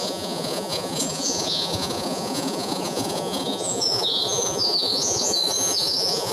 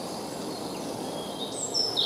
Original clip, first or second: second